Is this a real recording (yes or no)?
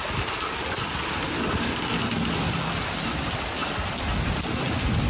yes